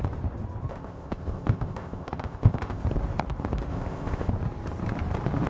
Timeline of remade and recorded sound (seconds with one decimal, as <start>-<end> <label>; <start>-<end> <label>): 0.0-0.7 recorded; 0.7-2.8 remade; 2.8-3.7 recorded; 3.7-4.3 remade; 4.3-5.5 recorded